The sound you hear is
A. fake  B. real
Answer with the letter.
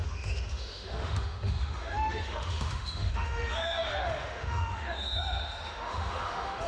A